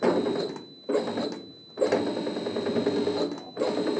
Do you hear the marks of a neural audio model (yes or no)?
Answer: no